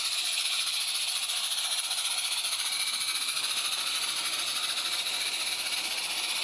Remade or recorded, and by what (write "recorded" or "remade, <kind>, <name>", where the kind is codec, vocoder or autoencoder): recorded